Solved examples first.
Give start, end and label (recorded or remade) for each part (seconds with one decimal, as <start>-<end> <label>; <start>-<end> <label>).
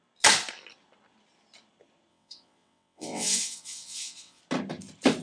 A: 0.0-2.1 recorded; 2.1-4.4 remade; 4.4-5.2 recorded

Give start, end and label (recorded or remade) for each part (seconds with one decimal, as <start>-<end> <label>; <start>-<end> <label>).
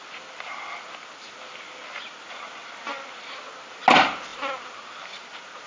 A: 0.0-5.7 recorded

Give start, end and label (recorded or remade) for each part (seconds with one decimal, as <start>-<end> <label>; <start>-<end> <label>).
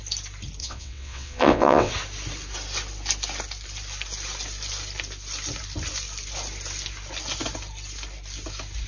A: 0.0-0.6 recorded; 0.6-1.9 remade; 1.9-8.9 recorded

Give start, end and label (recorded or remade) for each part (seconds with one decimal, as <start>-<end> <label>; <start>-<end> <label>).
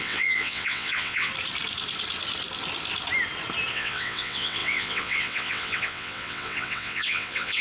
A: 0.0-1.3 remade; 1.3-3.7 recorded; 3.7-7.6 remade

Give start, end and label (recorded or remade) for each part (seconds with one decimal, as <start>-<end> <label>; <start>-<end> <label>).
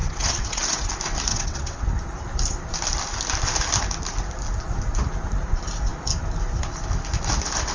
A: 0.0-0.9 remade; 0.9-1.3 recorded; 1.3-1.8 remade; 1.8-7.7 recorded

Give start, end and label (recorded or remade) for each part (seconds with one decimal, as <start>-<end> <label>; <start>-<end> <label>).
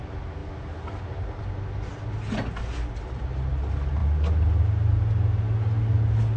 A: 0.0-6.4 recorded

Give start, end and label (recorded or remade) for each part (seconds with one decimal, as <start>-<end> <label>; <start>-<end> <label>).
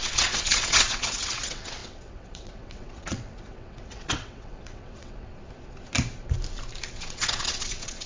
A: 0.0-5.3 remade; 5.3-6.9 recorded; 6.9-8.1 remade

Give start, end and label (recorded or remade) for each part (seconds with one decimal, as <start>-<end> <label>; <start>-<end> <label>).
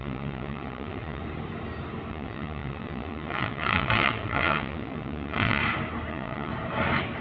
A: 0.0-1.2 remade; 1.2-2.1 recorded; 2.1-5.6 remade; 5.6-6.1 recorded; 6.1-6.5 remade; 6.5-7.2 recorded